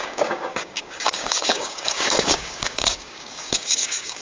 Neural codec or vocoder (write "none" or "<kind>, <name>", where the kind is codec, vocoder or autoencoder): codec, DAC